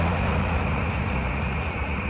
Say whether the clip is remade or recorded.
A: remade